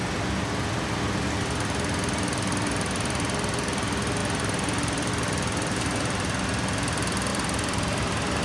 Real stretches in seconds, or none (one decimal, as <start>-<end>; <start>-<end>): 0.0-4.2; 5.1-7.3